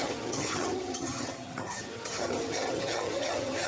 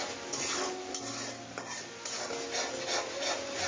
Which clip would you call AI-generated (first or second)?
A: first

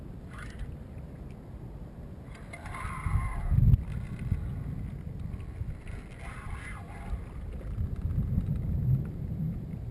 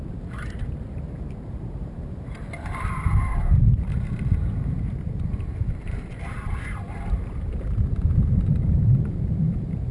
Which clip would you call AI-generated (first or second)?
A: second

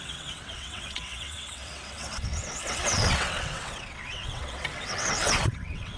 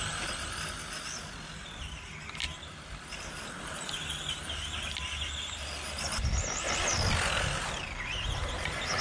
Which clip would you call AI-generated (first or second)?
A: first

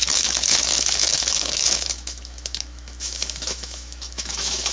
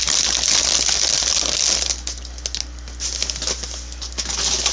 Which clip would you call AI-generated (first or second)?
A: first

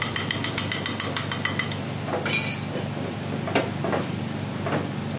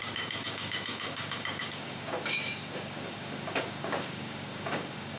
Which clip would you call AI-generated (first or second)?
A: second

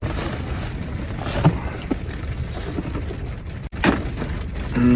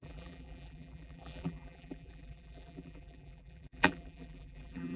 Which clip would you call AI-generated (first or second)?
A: second